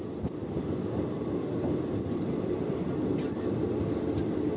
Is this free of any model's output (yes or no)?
yes